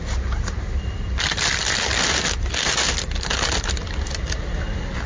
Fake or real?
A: real